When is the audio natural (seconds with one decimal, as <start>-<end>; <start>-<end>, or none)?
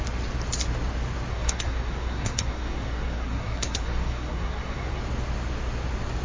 0.0-1.3; 5.0-6.2